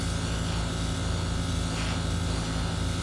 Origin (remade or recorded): recorded